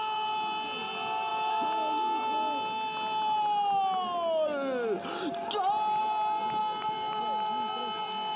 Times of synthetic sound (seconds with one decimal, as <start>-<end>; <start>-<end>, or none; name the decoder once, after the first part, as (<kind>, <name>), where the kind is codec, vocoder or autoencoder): none